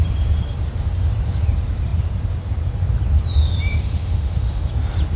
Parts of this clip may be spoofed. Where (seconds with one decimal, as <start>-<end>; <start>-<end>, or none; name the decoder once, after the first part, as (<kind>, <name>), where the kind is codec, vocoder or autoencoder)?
3.7-4.7 (autoencoder, DAC-VAE)